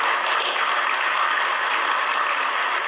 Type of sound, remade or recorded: recorded